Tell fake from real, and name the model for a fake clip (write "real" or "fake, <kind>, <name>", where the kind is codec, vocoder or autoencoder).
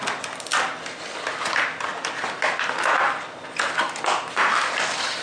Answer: real